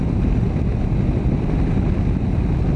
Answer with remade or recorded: recorded